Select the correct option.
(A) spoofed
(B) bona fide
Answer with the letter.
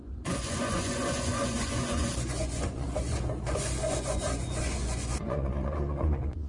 A